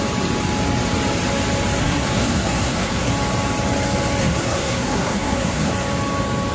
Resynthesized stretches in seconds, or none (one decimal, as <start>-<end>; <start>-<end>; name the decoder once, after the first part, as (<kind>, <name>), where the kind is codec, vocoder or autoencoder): 1.8-3.1 (codec, SNAC); 4.2-5.7